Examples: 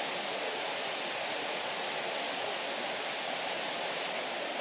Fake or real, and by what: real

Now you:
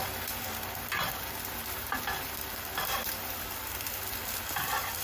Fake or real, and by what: fake, vocoder, BigVGAN v2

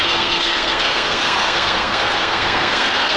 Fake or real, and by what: fake, codec, SNAC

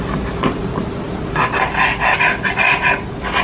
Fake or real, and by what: real